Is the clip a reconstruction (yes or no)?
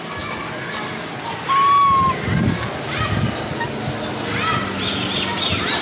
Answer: no